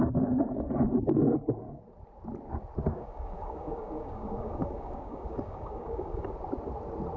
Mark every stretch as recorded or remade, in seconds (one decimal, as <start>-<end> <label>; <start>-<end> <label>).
0.0-2.9 recorded; 2.9-6.3 remade; 6.3-7.2 recorded